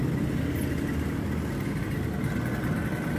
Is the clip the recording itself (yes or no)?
yes